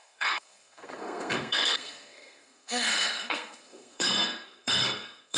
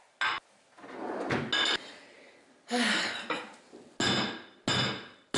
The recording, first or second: second